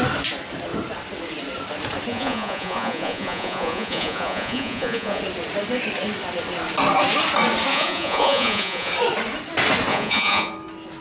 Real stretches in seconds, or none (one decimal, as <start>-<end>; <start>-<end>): 0.0-2.1; 5.2-7.7; 8.9-9.9; 10.5-11.0